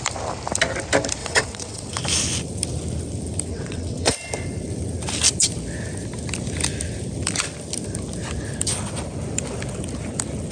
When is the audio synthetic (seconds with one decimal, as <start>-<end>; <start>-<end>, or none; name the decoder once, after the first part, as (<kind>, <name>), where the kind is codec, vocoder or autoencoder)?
1.2-2.0 (vocoder, WaveNeXt); 3.5-4.1

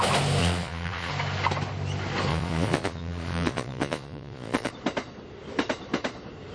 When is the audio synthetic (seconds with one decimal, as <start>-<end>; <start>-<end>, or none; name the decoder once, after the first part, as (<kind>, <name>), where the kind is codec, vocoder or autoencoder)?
0.4-1.1 (vocoder, Vocos); 2.3-4.7